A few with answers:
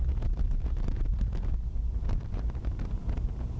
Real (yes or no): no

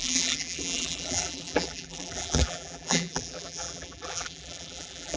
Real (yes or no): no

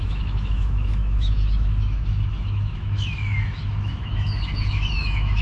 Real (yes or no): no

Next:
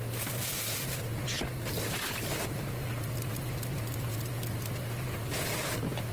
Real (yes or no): yes